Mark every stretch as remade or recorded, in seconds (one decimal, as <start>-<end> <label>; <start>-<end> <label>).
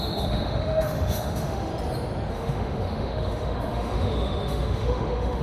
0.0-1.7 remade; 1.7-2.3 recorded; 2.3-5.4 remade